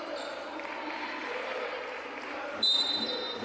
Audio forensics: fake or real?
fake